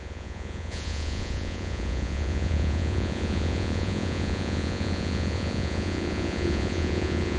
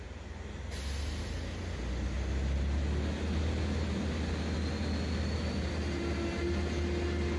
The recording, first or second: second